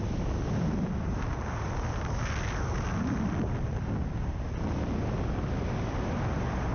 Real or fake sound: real